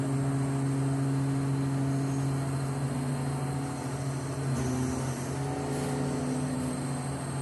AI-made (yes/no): no